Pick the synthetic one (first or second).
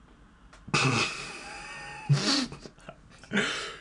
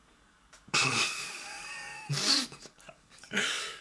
second